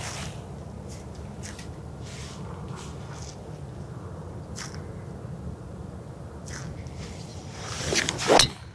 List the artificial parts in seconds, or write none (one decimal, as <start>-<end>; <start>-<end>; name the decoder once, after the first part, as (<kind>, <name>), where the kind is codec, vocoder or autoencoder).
7.3-8.0 (vocoder, BigVGAN v2)